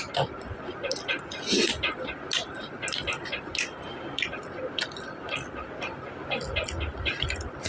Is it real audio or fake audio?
real